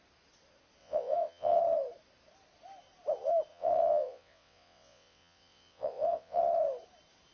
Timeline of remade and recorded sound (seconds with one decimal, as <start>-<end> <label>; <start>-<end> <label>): 0.0-0.8 recorded; 0.8-1.6 remade; 1.6-3.5 recorded; 3.5-6.4 remade; 6.4-7.3 recorded